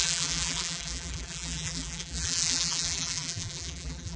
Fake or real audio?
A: fake